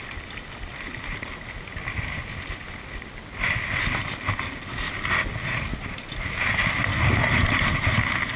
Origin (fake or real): real